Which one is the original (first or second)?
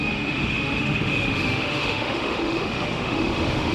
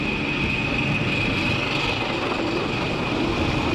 second